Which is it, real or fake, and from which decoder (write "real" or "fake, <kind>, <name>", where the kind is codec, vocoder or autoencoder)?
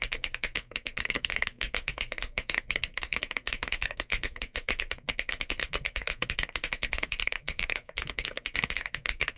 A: fake, codec, SNAC